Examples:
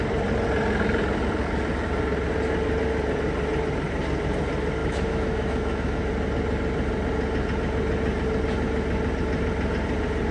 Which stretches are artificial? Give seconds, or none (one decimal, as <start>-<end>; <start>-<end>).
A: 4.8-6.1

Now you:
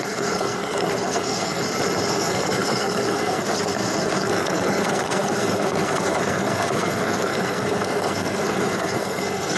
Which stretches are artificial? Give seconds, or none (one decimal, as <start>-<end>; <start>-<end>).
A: 0.0-1.6; 2.1-9.6

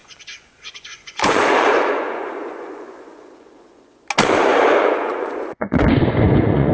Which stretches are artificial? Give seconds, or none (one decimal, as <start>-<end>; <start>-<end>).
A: 0.0-4.0; 4.5-6.7